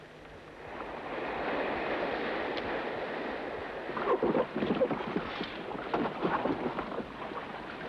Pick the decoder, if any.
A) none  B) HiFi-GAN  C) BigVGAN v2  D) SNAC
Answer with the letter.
A